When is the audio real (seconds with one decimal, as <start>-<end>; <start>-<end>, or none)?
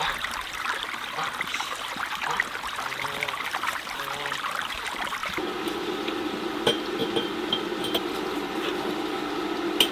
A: 5.2-5.7; 7.0-7.8; 8.7-9.9